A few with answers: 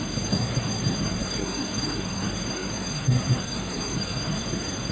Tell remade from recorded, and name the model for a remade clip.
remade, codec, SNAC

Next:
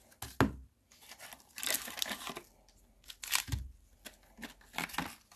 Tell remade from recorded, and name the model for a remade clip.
recorded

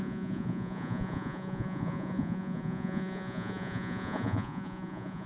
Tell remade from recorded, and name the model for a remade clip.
remade, vocoder, Vocos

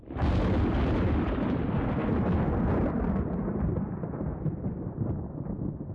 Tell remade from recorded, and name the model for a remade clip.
recorded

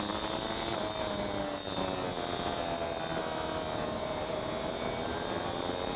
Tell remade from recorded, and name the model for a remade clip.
recorded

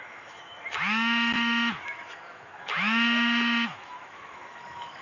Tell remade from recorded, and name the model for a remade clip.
remade, autoencoder, DAC-VAE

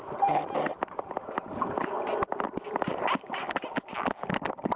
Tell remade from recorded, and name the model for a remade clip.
recorded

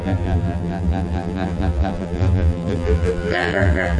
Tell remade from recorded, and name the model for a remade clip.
remade, vocoder, BigVGAN v2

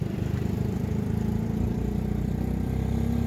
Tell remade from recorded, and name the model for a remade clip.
remade, vocoder, BigVGAN v2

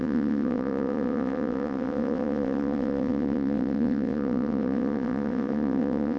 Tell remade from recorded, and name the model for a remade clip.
remade, vocoder, WaveNeXt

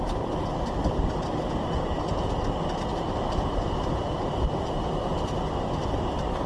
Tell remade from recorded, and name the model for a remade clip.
recorded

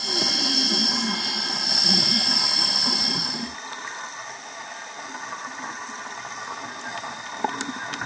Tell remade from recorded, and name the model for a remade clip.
recorded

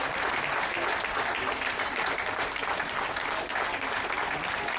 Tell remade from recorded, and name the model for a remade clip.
recorded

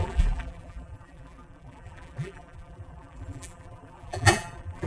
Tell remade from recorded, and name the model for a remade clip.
remade, vocoder, BigVGAN v2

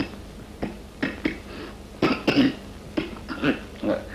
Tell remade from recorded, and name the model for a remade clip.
recorded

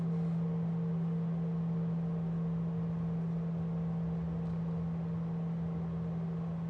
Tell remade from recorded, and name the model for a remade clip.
recorded